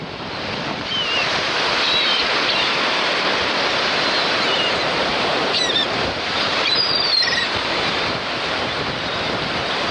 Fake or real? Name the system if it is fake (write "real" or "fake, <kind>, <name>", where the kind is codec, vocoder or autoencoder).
fake, vocoder, BigVGAN v2